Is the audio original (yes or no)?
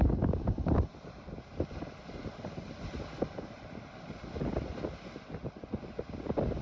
yes